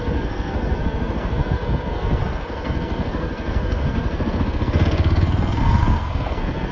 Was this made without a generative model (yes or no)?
no